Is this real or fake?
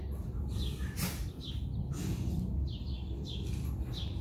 real